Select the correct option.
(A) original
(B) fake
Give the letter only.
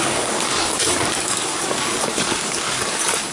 B